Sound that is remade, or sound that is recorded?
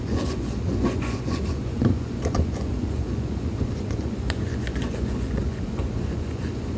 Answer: remade